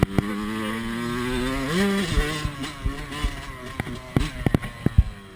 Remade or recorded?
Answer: recorded